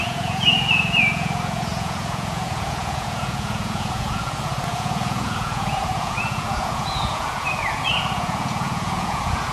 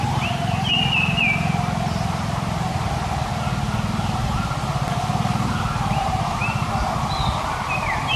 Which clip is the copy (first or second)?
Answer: first